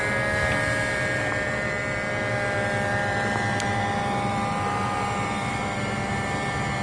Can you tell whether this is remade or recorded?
recorded